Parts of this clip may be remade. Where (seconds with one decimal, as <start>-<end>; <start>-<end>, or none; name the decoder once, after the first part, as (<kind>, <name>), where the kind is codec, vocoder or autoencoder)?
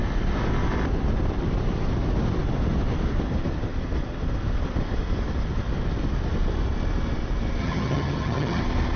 7.6-8.6 (vocoder, HiFi-GAN)